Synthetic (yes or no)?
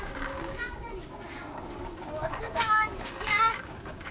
yes